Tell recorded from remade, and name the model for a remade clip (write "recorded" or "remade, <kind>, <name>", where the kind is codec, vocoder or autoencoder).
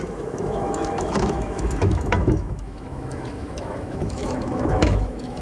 remade, autoencoder, DAC-VAE